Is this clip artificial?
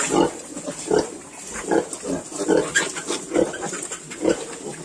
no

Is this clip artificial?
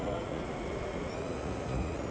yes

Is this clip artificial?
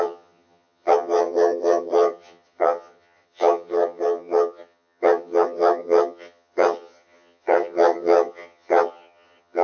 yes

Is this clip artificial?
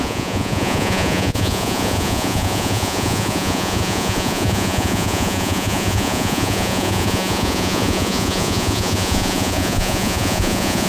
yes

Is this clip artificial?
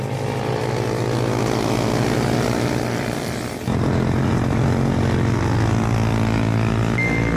no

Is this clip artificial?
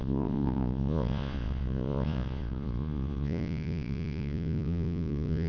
yes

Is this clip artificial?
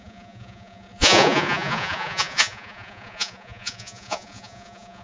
yes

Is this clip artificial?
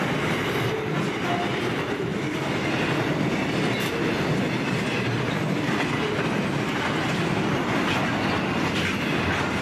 no